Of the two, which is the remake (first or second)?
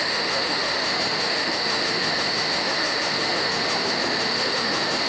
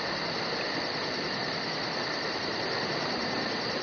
first